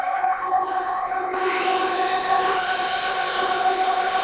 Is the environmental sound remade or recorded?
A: remade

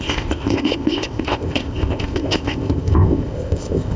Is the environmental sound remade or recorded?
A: remade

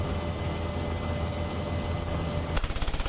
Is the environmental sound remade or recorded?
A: recorded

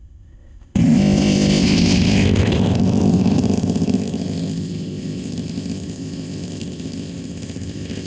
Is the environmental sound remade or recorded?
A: remade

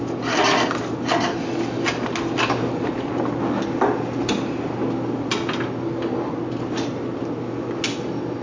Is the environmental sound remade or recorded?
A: recorded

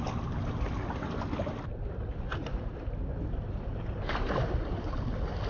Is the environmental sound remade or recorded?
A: recorded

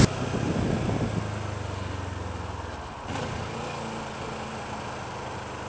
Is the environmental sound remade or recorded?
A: recorded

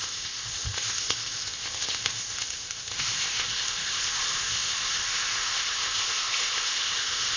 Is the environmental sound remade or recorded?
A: remade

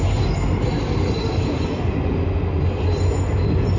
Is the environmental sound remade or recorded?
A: recorded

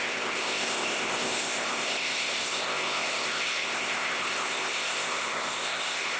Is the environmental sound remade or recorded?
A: remade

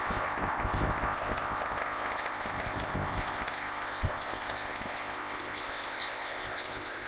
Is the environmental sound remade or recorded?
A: remade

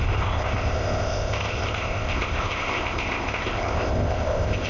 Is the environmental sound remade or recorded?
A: remade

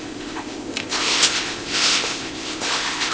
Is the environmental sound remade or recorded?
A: remade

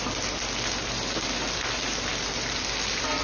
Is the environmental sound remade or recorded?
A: recorded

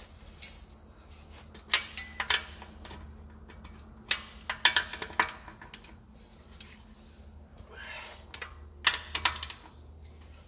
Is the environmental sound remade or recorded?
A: recorded